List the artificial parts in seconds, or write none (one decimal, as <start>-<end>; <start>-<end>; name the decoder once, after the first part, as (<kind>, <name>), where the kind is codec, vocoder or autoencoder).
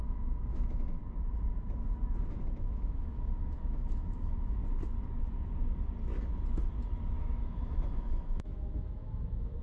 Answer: 0.0-1.0 (autoencoder, DAC-VAE); 2.3-4.6; 7.2-9.6